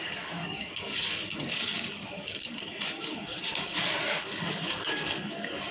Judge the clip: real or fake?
fake